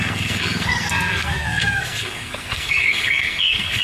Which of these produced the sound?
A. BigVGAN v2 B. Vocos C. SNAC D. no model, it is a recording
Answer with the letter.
C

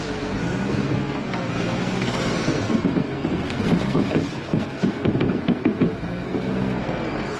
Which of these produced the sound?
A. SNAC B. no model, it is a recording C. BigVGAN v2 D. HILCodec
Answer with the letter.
A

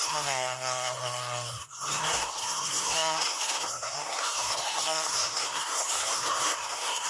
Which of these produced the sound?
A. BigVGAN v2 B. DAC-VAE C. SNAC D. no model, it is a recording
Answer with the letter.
C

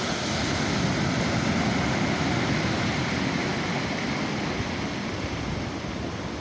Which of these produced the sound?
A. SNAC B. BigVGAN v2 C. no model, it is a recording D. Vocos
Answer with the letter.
C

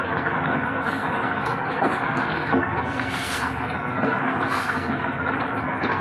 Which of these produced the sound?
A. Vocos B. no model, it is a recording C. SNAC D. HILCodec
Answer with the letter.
C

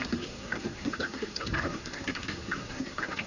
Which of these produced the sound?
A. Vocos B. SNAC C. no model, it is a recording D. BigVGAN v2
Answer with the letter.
B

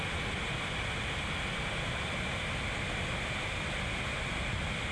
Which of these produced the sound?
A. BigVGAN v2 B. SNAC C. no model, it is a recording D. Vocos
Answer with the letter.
C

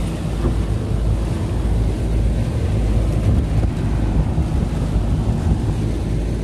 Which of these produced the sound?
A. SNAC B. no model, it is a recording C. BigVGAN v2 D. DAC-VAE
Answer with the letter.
B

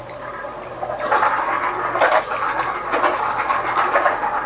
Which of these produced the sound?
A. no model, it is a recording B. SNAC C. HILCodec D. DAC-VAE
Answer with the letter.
A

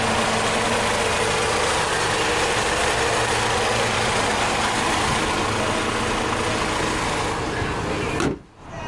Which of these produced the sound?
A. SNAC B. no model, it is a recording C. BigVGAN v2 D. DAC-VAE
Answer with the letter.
B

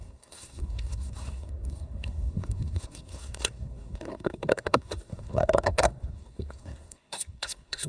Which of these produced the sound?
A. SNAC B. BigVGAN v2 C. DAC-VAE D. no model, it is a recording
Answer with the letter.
A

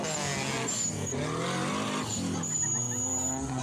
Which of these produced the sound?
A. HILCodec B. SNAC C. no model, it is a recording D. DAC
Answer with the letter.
C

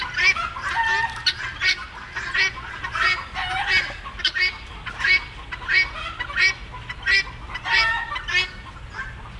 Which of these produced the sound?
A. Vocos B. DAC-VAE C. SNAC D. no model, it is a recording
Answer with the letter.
D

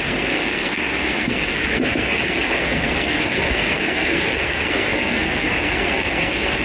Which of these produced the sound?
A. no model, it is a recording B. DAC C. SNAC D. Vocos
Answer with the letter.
C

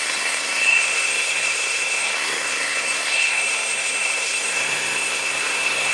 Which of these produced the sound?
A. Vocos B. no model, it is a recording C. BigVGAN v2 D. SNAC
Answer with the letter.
D